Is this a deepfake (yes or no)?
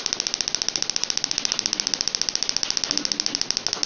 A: no